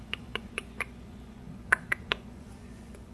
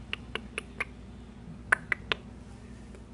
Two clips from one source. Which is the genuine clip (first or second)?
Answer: second